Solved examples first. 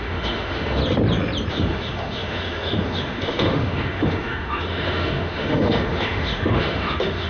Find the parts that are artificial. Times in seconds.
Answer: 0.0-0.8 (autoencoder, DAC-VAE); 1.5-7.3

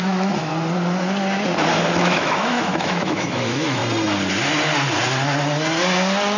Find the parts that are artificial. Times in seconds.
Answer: 0.0-0.5 (autoencoder, DAC-VAE); 2.0-3.8

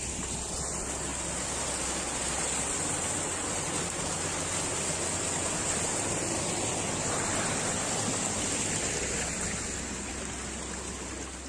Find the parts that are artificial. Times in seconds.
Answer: none